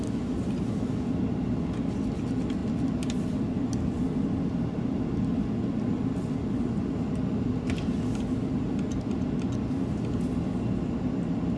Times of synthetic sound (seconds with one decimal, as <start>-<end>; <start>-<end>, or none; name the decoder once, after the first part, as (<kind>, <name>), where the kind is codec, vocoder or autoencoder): none